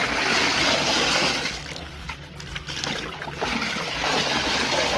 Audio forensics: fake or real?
real